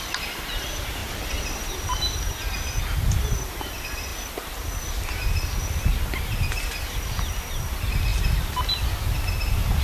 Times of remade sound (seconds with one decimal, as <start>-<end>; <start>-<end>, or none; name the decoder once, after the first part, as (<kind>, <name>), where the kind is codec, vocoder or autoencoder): 1.0-1.6 (vocoder, BigVGAN v2)